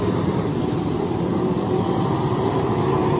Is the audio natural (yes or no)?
no